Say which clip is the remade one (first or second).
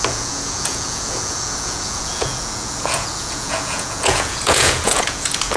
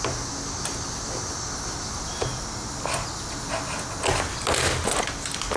first